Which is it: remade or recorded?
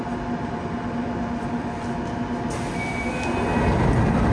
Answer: recorded